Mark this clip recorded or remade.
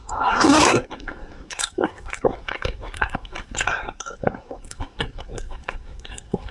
remade